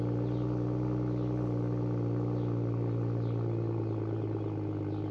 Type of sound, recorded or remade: recorded